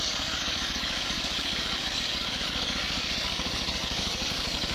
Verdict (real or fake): fake